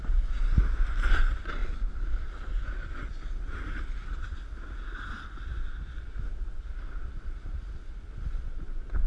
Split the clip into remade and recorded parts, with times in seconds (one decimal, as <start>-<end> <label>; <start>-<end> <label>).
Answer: 0.0-9.1 recorded